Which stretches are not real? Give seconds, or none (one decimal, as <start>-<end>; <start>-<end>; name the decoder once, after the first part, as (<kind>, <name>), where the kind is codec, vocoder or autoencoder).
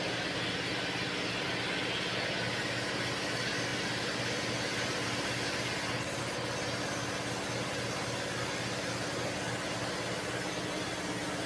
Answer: none